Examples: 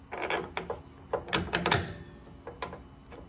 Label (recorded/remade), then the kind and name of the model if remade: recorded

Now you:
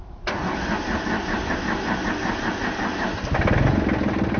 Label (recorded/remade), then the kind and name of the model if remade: recorded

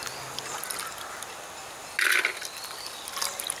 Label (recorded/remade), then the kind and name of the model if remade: recorded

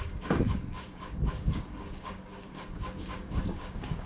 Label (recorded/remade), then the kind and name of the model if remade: remade, codec, DAC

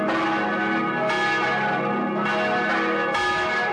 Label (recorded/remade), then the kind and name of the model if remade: recorded